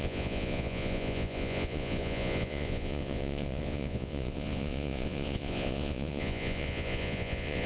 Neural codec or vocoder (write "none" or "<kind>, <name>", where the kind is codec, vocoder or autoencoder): vocoder, Vocos